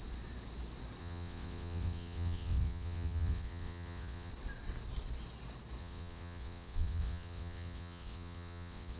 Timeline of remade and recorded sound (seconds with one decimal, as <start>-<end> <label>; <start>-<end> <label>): 0.0-1.0 recorded; 1.0-4.3 remade; 4.3-5.8 recorded; 5.8-9.0 remade